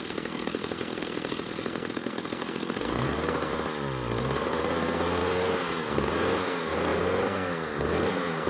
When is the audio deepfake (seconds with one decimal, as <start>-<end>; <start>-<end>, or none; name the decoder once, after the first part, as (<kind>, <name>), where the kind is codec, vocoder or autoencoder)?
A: 0.0-3.5 (codec, SNAC); 4.2-8.5